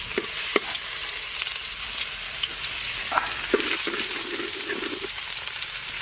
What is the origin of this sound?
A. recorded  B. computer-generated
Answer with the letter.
A